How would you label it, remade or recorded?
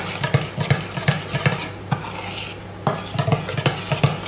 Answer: recorded